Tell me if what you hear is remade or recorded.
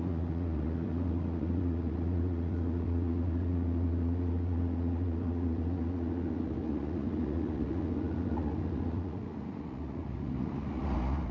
remade